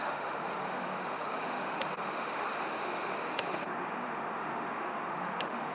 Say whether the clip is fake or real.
fake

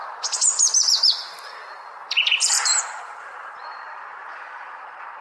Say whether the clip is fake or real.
real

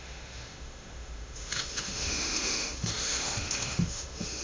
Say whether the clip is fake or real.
fake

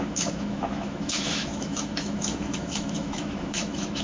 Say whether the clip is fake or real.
fake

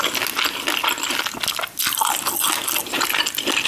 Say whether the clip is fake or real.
real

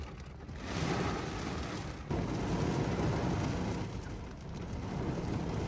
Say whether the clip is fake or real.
real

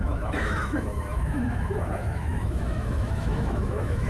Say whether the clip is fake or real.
fake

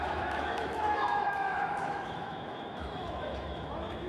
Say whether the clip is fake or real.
fake